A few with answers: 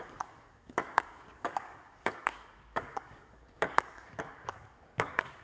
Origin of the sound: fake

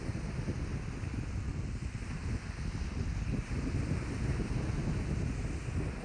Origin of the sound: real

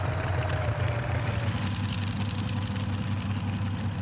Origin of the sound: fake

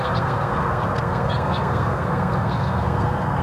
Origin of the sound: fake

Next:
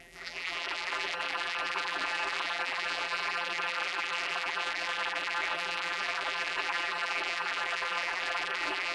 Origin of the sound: fake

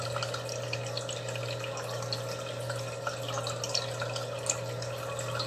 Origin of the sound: real